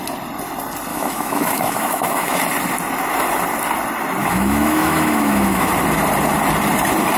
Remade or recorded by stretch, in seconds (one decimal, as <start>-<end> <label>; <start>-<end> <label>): 0.0-0.9 recorded; 0.9-2.4 remade; 2.4-4.2 recorded; 4.2-5.7 remade; 5.7-7.2 recorded